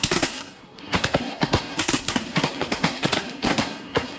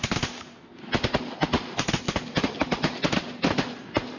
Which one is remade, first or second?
first